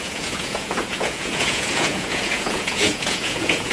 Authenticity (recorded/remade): remade